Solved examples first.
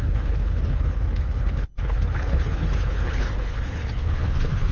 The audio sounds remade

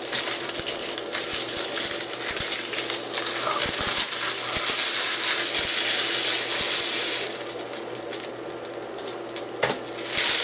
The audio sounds recorded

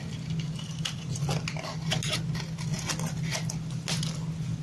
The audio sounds recorded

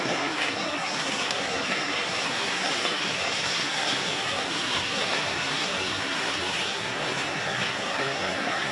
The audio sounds remade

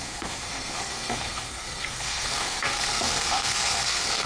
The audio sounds remade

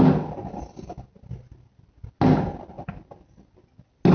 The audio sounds recorded